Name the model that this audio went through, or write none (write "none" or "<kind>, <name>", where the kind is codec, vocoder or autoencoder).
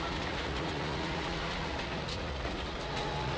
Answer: vocoder, Vocos